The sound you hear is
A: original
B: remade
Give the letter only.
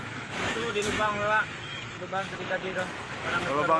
B